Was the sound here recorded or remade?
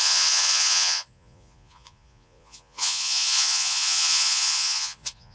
remade